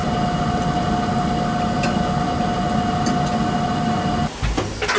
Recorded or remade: recorded